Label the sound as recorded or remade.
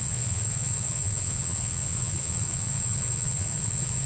remade